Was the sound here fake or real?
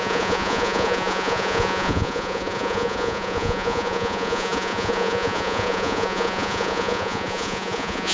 fake